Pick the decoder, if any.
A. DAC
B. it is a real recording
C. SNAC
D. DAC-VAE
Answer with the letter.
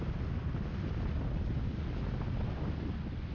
B